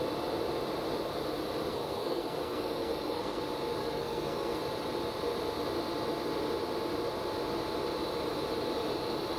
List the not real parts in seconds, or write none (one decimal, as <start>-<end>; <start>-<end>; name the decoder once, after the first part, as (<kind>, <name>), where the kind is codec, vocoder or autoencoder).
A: 1.7-3.4 (codec, SNAC); 3.8-4.6